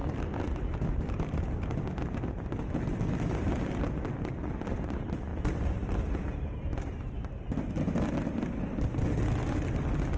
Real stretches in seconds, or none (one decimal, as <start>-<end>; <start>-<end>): 0.0-10.2